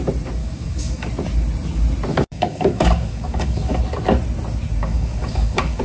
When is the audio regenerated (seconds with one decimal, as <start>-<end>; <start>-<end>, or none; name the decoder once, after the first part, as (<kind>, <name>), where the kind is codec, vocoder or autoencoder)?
0.4-1.1 (codec, DAC); 2.1-3.8; 4.8-5.8